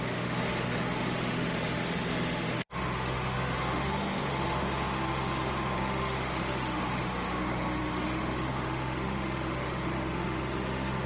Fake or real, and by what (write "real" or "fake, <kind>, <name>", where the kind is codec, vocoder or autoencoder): fake, autoencoder, DAC-VAE